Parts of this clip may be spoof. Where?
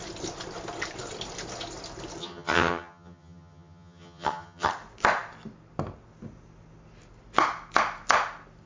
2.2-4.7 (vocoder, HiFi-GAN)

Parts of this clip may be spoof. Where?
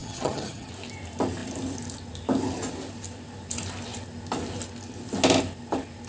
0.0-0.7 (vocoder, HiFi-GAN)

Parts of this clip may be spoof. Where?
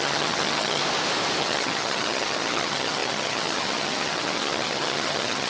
0.0-0.8 (vocoder, HiFi-GAN); 1.4-5.5